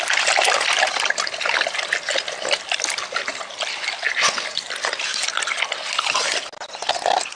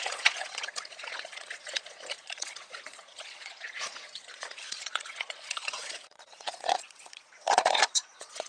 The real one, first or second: first